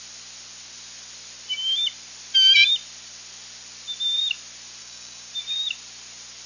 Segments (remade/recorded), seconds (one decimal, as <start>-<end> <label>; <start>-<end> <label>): 0.0-4.8 recorded; 4.8-5.3 remade; 5.3-6.5 recorded